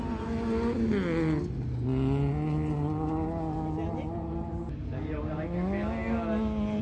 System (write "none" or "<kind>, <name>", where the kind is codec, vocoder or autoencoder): none